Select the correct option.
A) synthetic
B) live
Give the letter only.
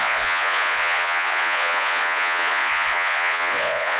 A